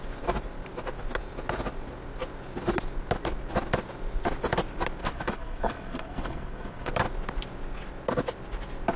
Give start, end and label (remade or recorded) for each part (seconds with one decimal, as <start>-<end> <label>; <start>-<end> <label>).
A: 0.0-5.0 recorded; 5.0-6.9 remade; 6.9-9.0 recorded